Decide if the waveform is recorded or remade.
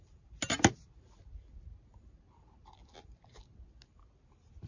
recorded